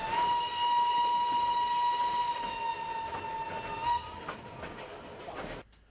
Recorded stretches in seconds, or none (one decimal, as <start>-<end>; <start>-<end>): 0.0-5.9